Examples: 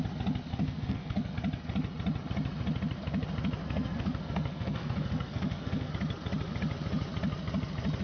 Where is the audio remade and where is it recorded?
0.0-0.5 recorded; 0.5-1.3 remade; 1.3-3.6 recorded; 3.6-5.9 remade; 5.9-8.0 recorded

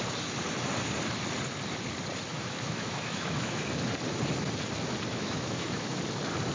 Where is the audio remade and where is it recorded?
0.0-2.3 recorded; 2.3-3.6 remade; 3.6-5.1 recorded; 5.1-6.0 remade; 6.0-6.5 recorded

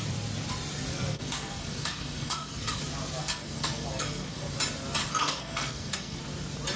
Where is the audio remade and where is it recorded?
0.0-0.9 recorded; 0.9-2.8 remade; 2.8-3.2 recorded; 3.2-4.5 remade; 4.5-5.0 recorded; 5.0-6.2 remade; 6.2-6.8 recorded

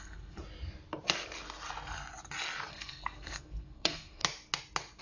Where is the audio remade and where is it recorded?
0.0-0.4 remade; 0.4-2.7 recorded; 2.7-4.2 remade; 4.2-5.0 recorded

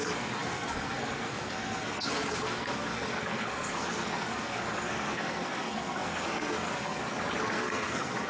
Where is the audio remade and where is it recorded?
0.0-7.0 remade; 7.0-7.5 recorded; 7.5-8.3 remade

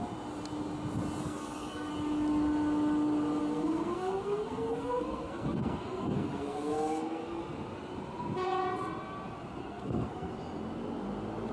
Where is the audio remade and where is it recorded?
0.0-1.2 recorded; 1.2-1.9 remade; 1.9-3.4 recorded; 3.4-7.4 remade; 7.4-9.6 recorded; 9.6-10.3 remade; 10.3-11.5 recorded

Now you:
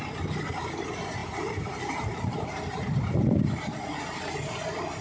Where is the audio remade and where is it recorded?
0.0-1.2 recorded; 1.2-4.2 remade; 4.2-5.0 recorded